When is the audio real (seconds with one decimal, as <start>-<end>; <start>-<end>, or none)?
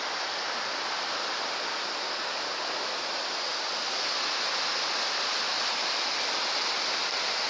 0.0-7.5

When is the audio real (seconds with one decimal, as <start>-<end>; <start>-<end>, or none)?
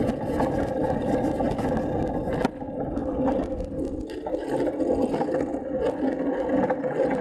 0.0-7.2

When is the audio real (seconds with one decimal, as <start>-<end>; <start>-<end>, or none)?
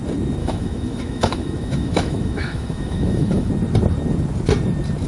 0.0-0.4; 3.5-5.1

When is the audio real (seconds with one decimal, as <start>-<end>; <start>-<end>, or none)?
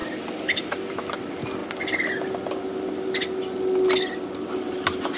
0.0-5.2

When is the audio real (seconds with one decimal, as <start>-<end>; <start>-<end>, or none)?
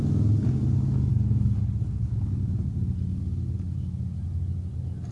0.0-1.1; 2.1-5.1